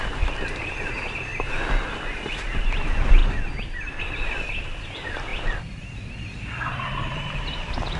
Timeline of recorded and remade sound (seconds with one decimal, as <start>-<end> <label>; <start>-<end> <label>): 0.0-1.3 remade; 1.3-1.9 recorded; 1.9-3.2 remade; 3.2-4.0 recorded; 4.0-8.0 remade